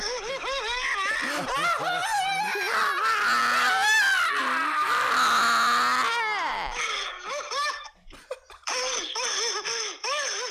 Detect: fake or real real